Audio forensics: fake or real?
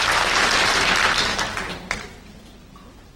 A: real